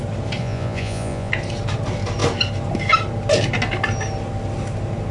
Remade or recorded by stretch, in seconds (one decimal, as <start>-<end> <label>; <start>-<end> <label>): 0.0-0.4 recorded; 0.4-1.3 remade; 1.3-5.1 recorded